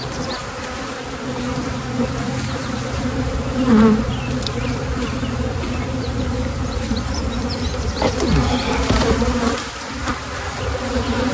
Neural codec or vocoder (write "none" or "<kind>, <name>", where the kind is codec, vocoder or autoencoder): vocoder, BigVGAN v2